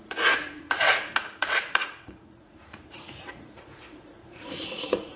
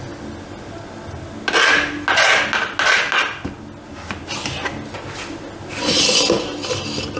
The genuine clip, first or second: second